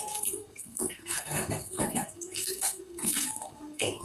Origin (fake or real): fake